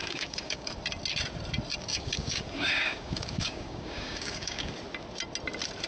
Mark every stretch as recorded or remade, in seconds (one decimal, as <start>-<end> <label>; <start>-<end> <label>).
0.0-0.7 remade; 0.7-1.9 recorded; 1.9-4.7 remade; 4.7-5.9 recorded